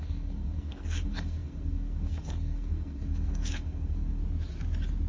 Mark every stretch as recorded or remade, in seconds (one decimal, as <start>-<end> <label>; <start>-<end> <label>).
0.0-4.2 remade; 4.2-5.1 recorded